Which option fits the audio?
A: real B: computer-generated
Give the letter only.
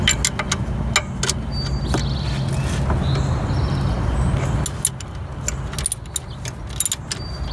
A